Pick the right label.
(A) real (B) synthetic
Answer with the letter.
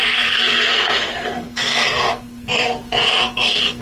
B